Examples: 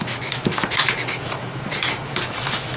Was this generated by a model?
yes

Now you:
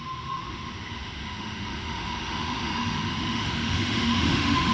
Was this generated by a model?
yes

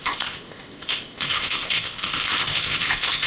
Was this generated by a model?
yes